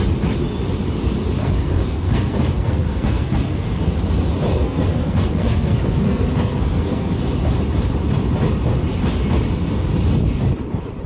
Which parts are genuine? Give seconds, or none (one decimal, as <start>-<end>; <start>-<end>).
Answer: 0.0-1.4; 3.8-4.5; 7.2-11.1